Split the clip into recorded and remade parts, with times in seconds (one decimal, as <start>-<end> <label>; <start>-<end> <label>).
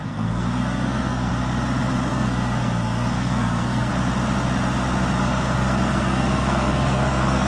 0.0-1.3 remade; 1.3-2.1 recorded; 2.1-3.9 remade; 3.9-5.2 recorded; 5.2-7.5 remade